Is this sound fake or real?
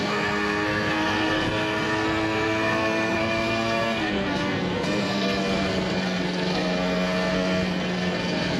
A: fake